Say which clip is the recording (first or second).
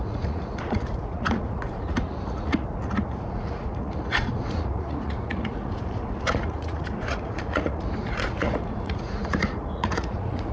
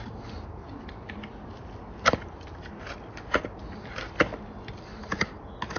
second